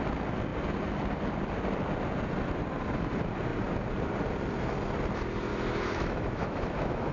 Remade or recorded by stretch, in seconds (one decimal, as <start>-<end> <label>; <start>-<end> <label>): 0.0-5.5 recorded; 5.5-7.1 remade